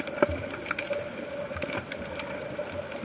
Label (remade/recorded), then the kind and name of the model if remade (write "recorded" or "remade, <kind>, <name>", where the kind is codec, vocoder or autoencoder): recorded